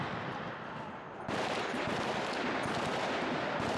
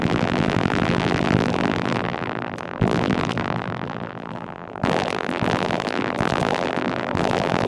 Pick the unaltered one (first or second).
first